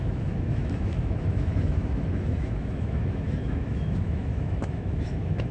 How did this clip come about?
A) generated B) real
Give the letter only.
A